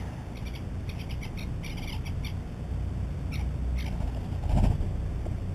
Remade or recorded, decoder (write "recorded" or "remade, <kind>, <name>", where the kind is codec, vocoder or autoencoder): recorded